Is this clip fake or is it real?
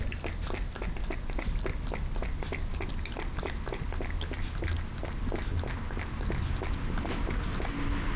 real